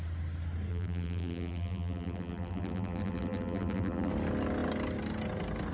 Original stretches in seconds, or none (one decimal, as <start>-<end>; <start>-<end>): 0.0-0.7; 4.1-5.7